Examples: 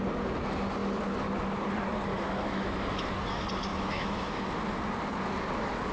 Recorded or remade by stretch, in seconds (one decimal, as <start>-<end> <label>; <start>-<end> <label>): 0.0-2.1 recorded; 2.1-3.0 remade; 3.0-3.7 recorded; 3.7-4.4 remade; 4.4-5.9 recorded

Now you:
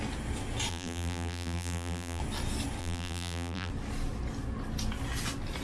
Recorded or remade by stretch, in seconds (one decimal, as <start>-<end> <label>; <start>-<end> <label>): 0.0-0.7 recorded; 0.7-2.2 remade; 2.2-2.8 recorded; 2.8-3.7 remade; 3.7-5.6 recorded

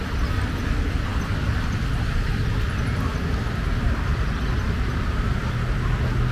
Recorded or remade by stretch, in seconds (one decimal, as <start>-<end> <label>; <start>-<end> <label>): 0.0-6.3 recorded

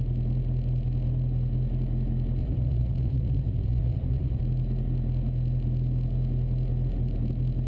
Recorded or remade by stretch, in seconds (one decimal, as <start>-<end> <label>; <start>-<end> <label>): 0.0-2.4 recorded; 2.4-4.4 remade; 4.4-7.7 recorded